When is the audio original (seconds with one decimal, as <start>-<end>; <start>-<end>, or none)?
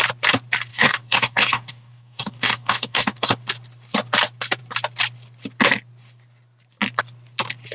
0.0-0.7; 3.3-7.7